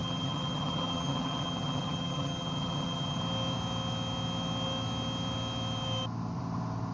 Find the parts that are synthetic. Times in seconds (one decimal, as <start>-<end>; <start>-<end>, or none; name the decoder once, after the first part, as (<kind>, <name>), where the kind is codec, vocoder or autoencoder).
0.0-3.2 (vocoder, HiFi-GAN)